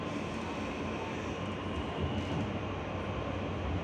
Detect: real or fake real